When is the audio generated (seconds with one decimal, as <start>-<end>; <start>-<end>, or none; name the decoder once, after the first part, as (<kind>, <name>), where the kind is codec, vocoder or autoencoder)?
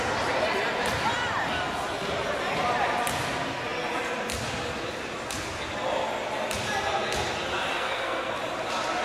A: 7.7-8.3 (codec, SNAC)